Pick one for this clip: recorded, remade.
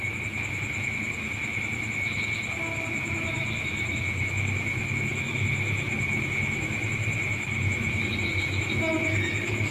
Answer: remade